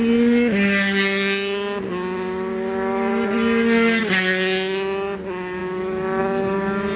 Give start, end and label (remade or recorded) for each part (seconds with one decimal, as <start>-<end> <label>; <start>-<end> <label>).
0.0-7.0 recorded